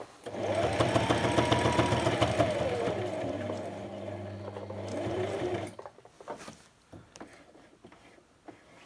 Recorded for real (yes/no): yes